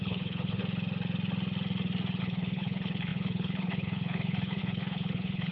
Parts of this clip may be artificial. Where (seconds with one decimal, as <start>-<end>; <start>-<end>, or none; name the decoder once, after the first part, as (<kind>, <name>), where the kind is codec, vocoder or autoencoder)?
0.0-0.6 (codec, HILCodec); 2.2-5.5